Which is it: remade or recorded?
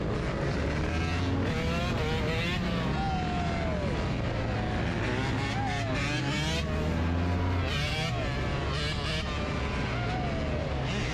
recorded